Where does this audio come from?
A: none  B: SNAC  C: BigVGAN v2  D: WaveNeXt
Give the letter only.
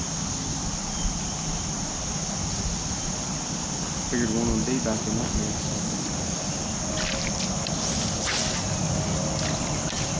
A